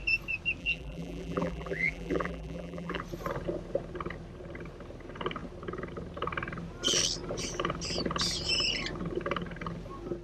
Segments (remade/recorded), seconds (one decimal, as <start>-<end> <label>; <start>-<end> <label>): 0.0-0.6 recorded; 0.6-3.0 remade; 3.0-10.2 recorded